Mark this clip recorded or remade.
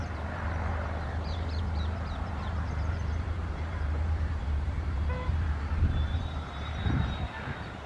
remade